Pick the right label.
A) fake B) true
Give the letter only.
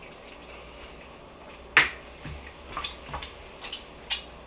B